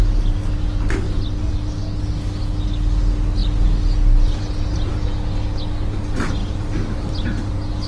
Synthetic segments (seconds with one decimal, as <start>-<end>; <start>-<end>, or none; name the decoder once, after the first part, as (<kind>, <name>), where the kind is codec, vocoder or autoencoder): 6.4-7.4 (vocoder, BigVGAN v2)